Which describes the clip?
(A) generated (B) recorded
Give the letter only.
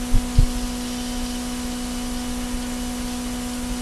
B